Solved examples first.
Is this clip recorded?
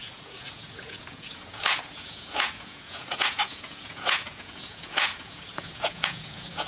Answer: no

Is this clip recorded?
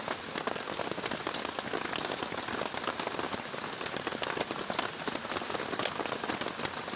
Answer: yes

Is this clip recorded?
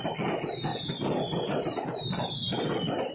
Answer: yes